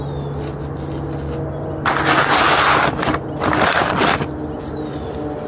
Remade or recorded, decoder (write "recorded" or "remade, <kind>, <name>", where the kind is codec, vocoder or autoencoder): recorded